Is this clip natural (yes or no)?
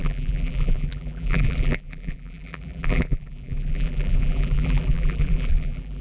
no